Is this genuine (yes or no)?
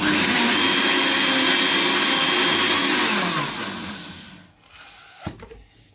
yes